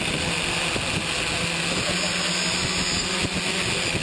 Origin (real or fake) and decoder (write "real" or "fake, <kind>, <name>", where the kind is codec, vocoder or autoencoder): real